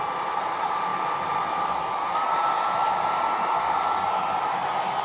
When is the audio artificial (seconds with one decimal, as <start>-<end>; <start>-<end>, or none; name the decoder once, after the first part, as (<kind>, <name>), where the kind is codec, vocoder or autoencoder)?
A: none